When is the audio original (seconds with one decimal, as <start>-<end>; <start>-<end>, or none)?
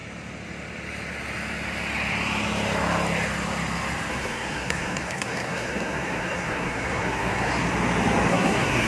0.0-4.1; 7.5-8.3